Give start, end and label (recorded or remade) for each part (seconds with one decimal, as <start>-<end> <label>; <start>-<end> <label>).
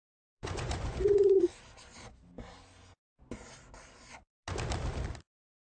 0.0-1.4 remade; 1.4-5.6 recorded